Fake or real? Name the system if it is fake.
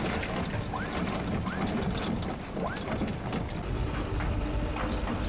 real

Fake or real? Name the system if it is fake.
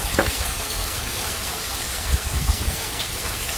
fake, codec, SNAC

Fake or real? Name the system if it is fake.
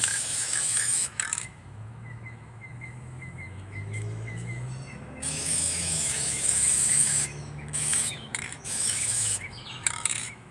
fake, autoencoder, DAC-VAE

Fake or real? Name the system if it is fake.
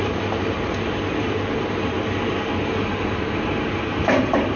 real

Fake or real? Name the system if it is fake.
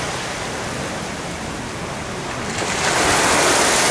real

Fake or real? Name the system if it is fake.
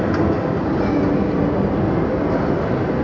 real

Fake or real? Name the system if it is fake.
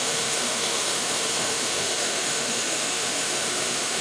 fake, autoencoder, DAC-VAE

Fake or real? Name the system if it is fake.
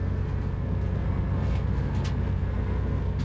fake, codec, SNAC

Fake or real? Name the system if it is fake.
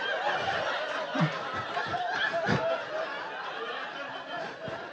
real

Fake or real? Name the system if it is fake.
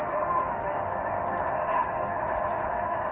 fake, autoencoder, DAC-VAE